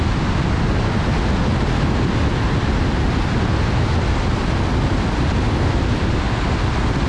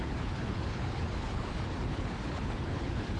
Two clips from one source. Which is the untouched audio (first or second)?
first